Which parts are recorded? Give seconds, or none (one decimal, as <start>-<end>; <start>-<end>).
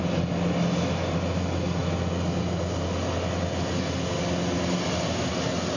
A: 0.0-5.8